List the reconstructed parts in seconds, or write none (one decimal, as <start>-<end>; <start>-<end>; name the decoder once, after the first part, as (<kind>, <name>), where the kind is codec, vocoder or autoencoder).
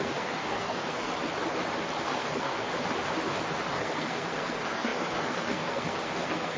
0.0-1.1 (codec, SNAC); 2.0-2.7; 3.7-6.6